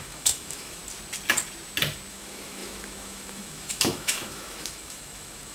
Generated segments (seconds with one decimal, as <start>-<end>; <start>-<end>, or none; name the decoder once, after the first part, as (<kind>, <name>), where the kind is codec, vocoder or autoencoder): 0.0-0.8 (autoencoder, DAC-VAE); 2.1-5.5